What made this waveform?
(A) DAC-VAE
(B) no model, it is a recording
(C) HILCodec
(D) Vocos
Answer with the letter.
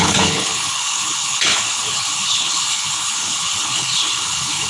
C